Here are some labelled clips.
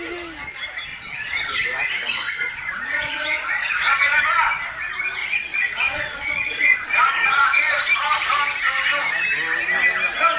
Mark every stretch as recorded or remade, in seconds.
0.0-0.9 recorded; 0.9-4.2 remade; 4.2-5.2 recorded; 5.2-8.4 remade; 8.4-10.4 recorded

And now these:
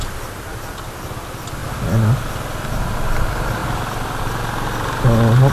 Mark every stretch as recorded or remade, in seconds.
0.0-5.5 recorded

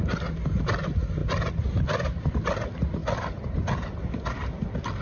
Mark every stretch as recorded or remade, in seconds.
0.0-5.0 recorded

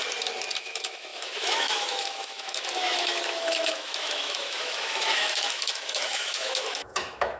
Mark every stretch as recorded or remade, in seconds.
0.0-0.6 recorded; 0.6-7.4 remade

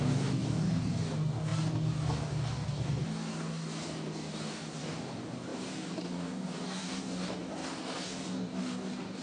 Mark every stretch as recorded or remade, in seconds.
0.0-9.2 remade

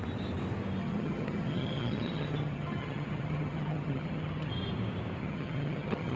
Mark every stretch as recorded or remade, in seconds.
0.0-0.8 recorded; 0.8-4.5 remade; 4.5-5.2 recorded; 5.2-6.2 remade

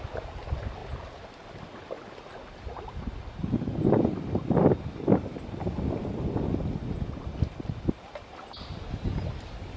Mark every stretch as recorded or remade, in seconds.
0.0-9.8 recorded